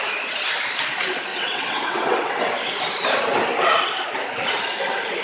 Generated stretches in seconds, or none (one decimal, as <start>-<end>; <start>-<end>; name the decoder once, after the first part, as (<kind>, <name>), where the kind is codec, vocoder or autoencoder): 1.3-2.5 (vocoder, WaveNeXt)